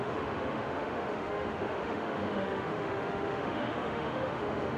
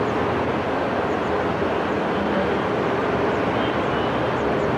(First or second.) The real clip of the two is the second